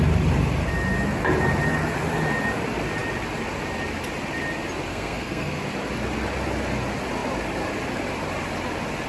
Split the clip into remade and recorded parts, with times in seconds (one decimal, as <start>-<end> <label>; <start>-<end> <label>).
0.0-4.9 recorded; 4.9-5.6 remade; 5.6-9.1 recorded